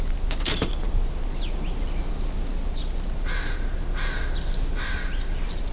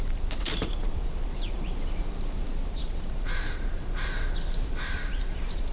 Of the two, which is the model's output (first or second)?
second